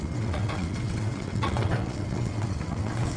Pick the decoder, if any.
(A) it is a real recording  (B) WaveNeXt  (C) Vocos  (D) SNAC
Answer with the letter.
B